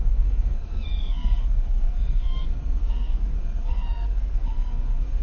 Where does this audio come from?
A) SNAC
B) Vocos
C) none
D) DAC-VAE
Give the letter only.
A